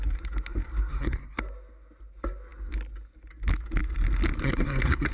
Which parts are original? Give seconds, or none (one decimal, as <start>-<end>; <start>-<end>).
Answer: 0.0-0.9; 1.4-4.4